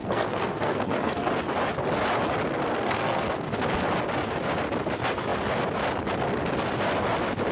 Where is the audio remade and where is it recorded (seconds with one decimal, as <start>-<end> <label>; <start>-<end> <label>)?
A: 0.0-1.3 remade; 1.3-2.7 recorded; 2.7-3.2 remade; 3.2-7.5 recorded